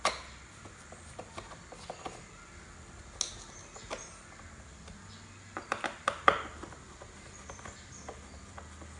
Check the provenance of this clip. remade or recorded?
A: recorded